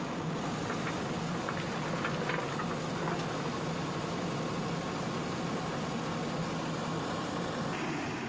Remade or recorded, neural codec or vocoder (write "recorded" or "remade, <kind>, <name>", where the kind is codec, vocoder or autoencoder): recorded